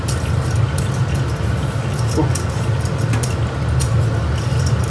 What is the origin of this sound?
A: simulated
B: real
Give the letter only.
B